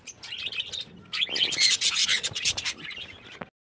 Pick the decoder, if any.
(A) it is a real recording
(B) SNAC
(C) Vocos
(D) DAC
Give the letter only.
A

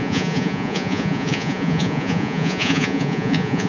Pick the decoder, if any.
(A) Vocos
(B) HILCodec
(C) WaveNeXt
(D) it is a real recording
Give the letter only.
A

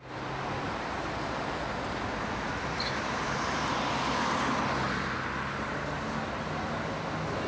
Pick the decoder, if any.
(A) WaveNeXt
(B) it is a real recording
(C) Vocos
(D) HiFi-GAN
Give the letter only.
B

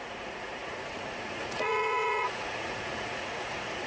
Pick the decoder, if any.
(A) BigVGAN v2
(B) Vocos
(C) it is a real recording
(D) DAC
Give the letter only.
B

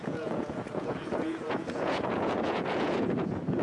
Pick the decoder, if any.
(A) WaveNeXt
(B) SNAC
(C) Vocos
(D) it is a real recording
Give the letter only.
C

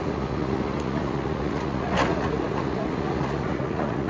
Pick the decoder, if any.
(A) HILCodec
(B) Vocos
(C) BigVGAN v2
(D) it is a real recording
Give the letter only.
B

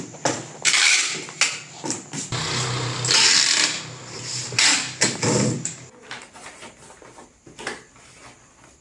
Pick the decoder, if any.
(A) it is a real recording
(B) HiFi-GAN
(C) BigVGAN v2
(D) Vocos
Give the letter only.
A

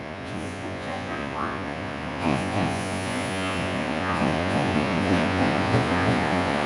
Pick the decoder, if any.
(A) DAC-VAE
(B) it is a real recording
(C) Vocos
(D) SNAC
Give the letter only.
C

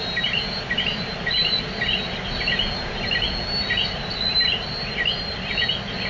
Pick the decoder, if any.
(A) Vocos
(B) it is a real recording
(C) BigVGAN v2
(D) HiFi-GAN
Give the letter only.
B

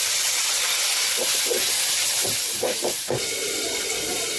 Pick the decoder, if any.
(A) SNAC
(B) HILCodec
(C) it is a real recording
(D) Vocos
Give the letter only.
C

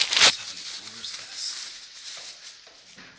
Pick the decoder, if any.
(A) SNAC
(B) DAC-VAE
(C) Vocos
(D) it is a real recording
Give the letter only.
D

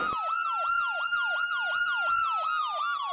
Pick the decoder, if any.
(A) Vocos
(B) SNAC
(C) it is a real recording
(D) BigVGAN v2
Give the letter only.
C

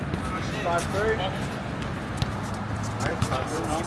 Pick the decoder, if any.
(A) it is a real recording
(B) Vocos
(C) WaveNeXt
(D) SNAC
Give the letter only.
A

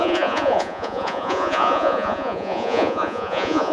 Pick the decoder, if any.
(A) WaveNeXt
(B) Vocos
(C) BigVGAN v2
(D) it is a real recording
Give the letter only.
B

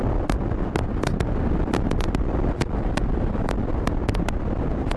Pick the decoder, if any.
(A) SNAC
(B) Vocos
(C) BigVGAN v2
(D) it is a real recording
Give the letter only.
D